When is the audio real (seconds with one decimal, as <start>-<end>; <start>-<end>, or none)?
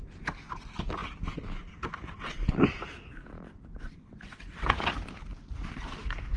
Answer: 0.0-6.4